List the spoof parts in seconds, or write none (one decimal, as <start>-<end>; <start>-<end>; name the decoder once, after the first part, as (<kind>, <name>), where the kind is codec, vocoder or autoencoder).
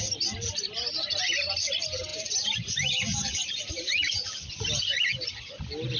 2.1-4.8 (vocoder, BigVGAN v2)